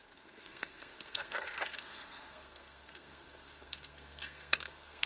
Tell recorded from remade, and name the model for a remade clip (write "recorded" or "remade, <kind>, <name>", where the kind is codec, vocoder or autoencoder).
remade, codec, SNAC